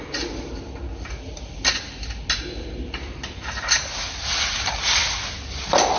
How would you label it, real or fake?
real